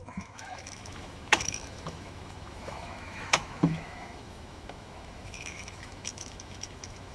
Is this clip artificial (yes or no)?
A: yes